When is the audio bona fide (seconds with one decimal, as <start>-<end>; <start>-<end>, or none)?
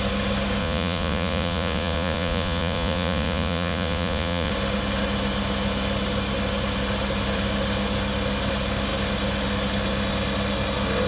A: 0.0-0.6; 4.5-11.1